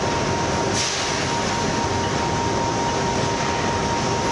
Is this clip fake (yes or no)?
no